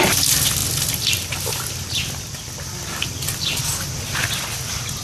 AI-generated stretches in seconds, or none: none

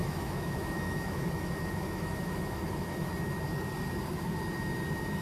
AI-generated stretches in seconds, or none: 0.0-3.1 (autoencoder, DAC-VAE)

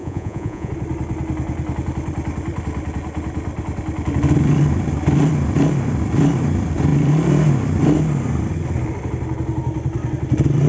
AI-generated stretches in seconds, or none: 0.0-0.7 (vocoder, Vocos)

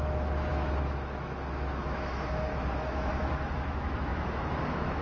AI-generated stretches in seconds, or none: 0.0-5.0 (autoencoder, DAC-VAE)

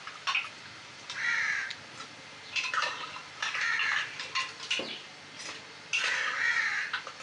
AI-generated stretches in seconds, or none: none

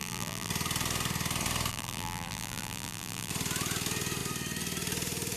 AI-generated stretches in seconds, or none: 0.0-0.5 (vocoder, BigVGAN v2); 1.7-3.3

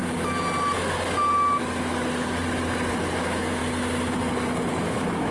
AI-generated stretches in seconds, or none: 3.2-3.6 (autoencoder, DAC-VAE); 4.7-5.3

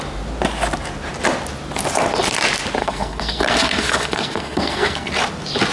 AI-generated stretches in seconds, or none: 2.8-5.1 (codec, SNAC)